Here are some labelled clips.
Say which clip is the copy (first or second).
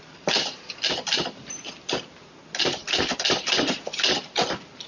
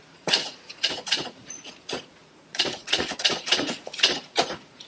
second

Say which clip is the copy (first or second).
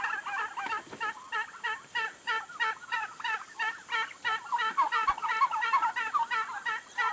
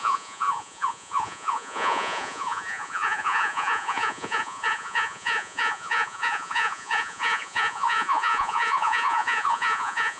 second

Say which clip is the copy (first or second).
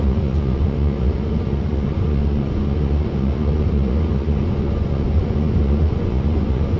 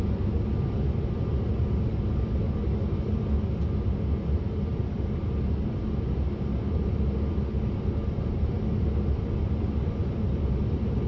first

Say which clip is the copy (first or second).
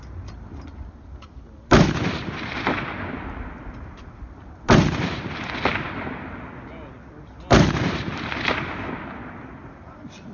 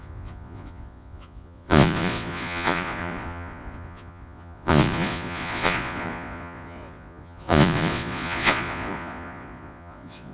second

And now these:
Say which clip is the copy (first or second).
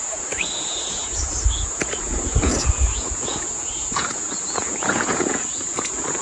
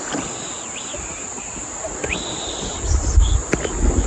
first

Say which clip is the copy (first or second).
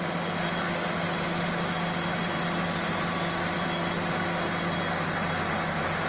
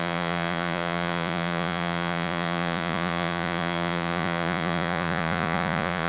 second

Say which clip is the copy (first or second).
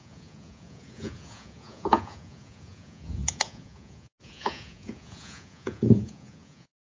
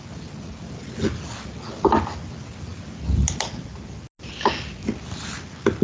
first